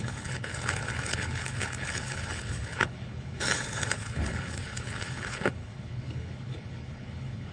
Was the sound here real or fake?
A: fake